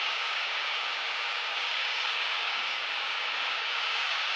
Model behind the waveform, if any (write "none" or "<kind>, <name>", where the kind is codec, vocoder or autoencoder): codec, DAC